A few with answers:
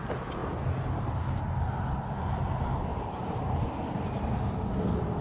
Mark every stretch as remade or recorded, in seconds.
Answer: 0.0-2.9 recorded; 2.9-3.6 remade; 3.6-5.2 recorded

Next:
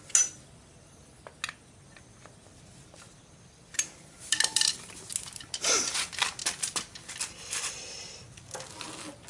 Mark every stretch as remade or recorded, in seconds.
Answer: 0.0-1.9 recorded; 1.9-5.1 remade; 5.1-6.4 recorded; 6.4-7.9 remade; 7.9-9.3 recorded

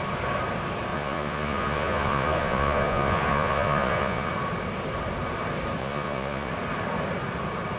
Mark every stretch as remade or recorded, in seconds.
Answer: 0.0-0.9 recorded; 0.9-4.3 remade; 4.3-5.8 recorded; 5.8-6.5 remade; 6.5-7.8 recorded

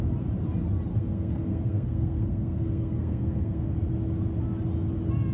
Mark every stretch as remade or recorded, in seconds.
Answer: 0.0-0.9 recorded; 0.9-3.6 remade; 3.6-5.3 recorded

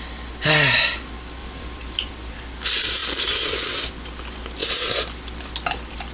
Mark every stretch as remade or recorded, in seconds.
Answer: 0.0-1.4 recorded; 1.4-2.1 remade; 2.1-3.0 recorded; 3.0-3.9 remade; 3.9-6.1 recorded

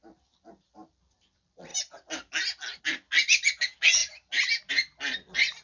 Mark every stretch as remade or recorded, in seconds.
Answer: 0.0-5.6 recorded

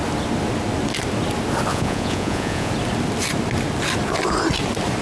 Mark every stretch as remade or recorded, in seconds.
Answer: 0.0-1.7 recorded; 1.7-2.7 remade; 2.7-5.0 recorded

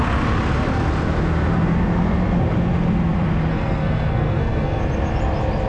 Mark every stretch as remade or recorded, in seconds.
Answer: 0.0-3.5 recorded; 3.5-4.8 remade; 4.8-5.7 recorded